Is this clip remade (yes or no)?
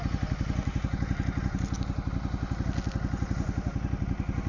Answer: no